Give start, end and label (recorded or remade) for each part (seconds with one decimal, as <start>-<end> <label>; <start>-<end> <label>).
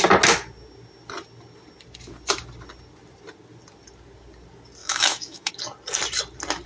0.0-4.8 recorded; 4.8-5.5 remade; 5.5-6.7 recorded